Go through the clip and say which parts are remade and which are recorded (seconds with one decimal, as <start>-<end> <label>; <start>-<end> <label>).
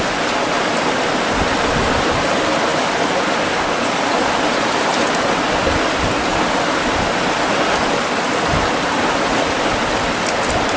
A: 0.0-10.8 recorded